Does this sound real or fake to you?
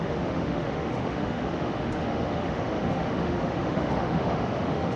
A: fake